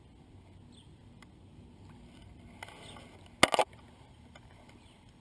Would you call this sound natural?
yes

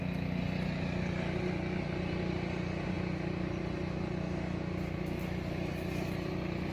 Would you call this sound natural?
yes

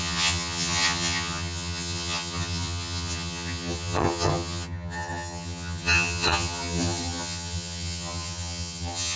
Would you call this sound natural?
no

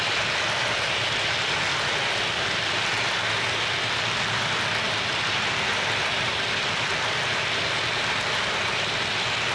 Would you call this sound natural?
yes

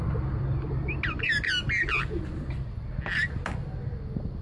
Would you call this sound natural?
yes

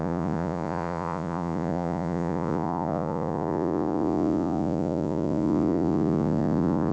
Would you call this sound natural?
no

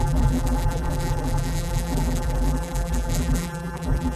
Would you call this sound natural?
no